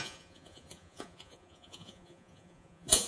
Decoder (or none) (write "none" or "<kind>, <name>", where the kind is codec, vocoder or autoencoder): vocoder, Vocos